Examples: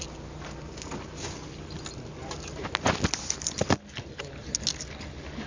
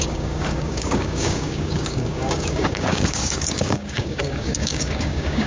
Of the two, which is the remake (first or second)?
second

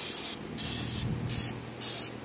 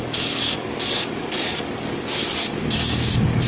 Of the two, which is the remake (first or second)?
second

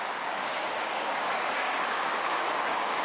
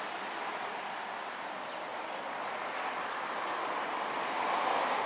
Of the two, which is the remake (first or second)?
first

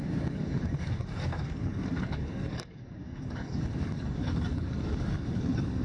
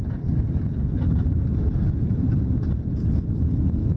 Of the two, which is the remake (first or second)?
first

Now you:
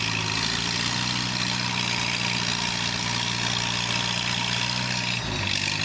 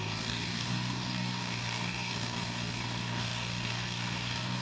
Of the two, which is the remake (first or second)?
second